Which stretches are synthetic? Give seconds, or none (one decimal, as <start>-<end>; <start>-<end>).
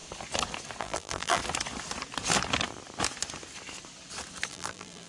0.8-1.4; 4.5-5.1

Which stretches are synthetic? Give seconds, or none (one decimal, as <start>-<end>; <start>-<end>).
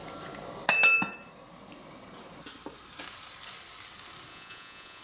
4.3-5.0